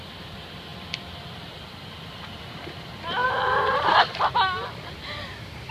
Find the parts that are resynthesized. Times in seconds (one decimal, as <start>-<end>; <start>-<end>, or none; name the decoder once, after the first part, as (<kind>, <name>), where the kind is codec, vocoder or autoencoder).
3.2-4.0 (vocoder, BigVGAN v2)